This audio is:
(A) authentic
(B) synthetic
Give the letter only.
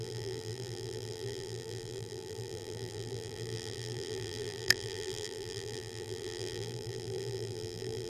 B